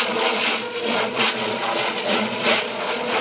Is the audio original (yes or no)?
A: no